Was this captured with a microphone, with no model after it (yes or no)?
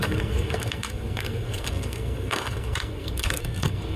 no